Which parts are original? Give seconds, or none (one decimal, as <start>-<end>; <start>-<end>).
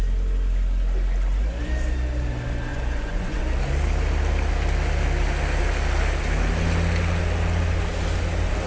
0.0-2.7; 3.4-8.7